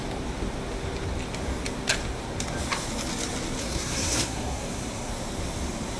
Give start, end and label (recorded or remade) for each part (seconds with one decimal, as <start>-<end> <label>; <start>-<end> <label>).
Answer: 0.0-3.6 recorded; 3.6-5.1 remade; 5.1-6.0 recorded